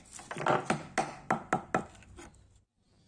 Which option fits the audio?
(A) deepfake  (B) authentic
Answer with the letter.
B